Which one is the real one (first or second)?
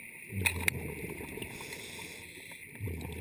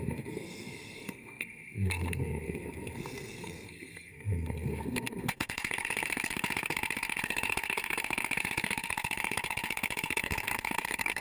first